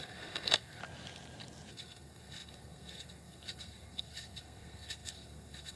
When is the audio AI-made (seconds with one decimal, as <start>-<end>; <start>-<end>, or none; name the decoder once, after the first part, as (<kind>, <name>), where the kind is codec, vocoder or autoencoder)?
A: 0.0-0.8 (codec, SNAC); 1.7-5.8